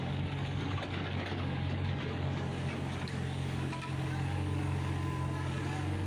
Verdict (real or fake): fake